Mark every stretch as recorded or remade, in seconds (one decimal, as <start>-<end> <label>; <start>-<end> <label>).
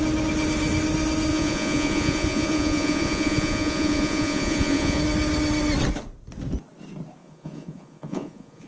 0.0-1.3 recorded; 1.3-5.0 remade; 5.0-7.2 recorded; 7.2-8.7 remade